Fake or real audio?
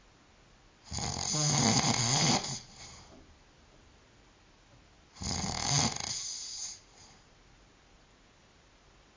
real